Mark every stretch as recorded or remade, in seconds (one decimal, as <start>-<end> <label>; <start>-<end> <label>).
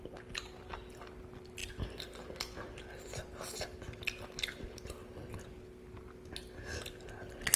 0.0-7.6 recorded